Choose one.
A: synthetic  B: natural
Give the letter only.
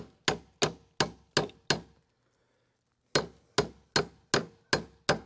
B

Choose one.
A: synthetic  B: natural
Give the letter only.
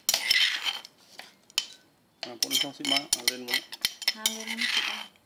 B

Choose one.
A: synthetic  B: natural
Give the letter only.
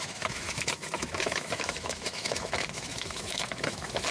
A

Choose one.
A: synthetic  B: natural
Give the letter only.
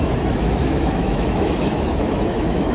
A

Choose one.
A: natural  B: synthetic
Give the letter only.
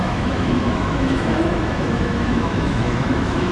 B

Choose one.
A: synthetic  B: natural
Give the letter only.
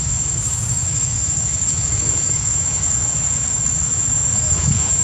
A